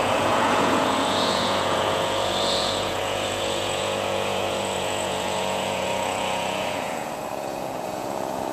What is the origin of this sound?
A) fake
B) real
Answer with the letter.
A